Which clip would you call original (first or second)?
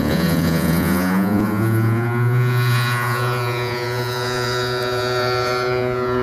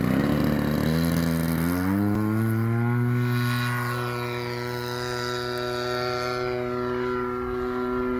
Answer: second